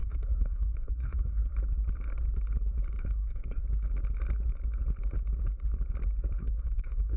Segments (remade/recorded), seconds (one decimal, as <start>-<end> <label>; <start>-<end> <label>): 0.0-1.5 remade; 1.5-3.0 recorded; 3.0-3.6 remade; 3.6-6.4 recorded; 6.4-7.2 remade